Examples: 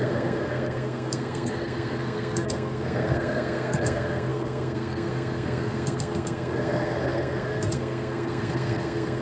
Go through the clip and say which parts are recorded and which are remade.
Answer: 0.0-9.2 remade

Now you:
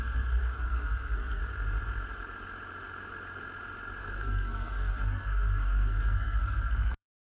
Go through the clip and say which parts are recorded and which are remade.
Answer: 0.0-1.4 remade; 1.4-4.0 recorded; 4.0-7.2 remade

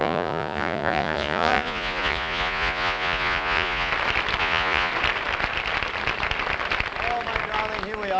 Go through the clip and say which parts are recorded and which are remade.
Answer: 0.0-3.9 remade; 3.9-4.4 recorded; 4.4-4.9 remade; 4.9-8.2 recorded

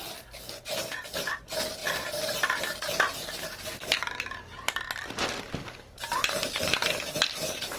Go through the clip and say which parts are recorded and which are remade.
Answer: 0.0-7.8 recorded

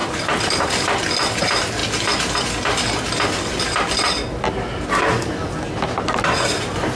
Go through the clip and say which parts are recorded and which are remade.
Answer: 0.0-1.0 remade; 1.0-6.9 recorded

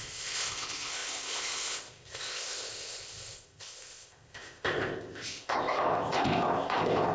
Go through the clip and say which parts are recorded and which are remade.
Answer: 0.0-7.1 remade